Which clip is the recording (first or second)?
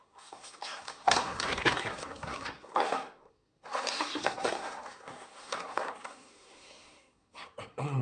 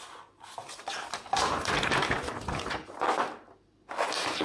second